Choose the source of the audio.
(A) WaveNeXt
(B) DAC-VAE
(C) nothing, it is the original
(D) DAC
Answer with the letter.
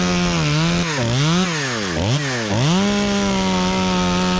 C